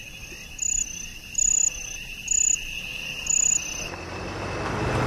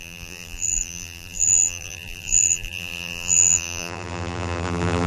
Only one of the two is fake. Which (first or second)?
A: second